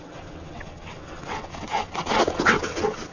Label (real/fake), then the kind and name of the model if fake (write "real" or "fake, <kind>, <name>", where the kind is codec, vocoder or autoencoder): fake, vocoder, WaveNeXt